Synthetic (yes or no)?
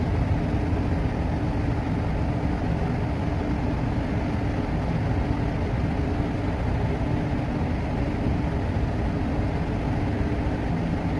no